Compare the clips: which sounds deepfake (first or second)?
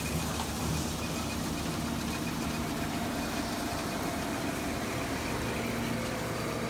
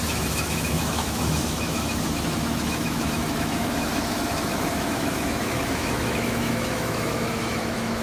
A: second